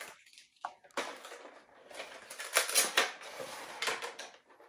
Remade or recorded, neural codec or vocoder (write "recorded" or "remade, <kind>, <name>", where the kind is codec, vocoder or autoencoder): recorded